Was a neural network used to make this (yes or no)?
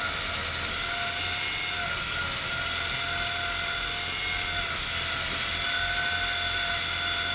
no